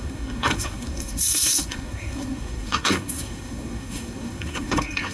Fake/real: fake